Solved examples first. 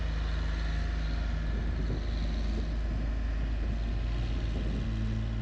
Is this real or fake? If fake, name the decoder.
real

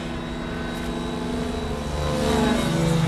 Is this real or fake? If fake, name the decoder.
real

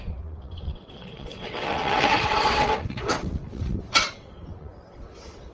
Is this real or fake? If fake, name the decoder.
fake, vocoder, WaveNeXt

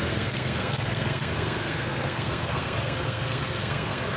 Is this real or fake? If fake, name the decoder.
fake, codec, SNAC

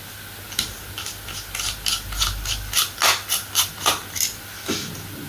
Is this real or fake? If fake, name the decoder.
real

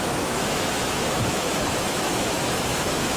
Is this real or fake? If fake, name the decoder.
fake, autoencoder, DAC-VAE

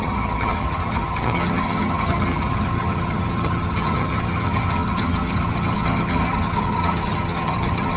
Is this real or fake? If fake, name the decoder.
fake, vocoder, HiFi-GAN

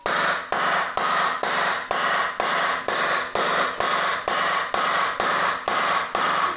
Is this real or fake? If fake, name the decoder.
real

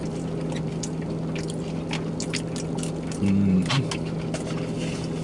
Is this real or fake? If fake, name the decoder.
real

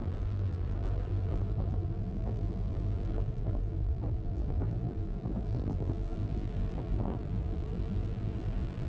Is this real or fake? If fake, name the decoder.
fake, vocoder, BigVGAN v2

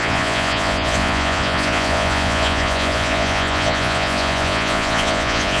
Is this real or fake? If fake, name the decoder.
fake, vocoder, Vocos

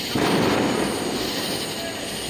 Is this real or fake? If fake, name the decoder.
real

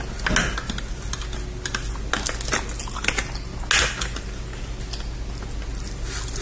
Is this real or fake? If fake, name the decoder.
real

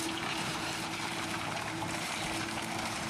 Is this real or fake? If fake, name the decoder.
fake, vocoder, BigVGAN v2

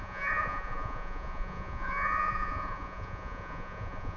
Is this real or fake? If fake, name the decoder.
fake, vocoder, Vocos